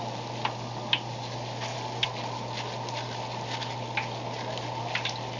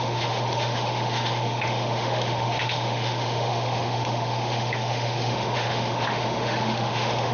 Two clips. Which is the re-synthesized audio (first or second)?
second